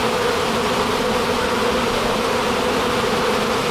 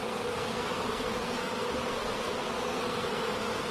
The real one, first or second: first